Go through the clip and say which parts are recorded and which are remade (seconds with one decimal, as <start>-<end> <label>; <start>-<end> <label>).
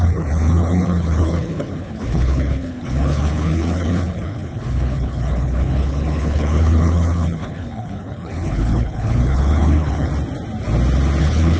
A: 0.0-10.1 remade; 10.1-11.2 recorded; 11.2-11.6 remade